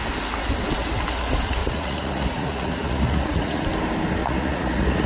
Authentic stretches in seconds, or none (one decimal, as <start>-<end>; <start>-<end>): 0.0-1.6; 3.6-4.2